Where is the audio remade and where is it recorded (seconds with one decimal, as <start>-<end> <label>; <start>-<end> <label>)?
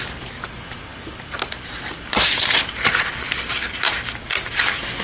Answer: 0.0-5.0 recorded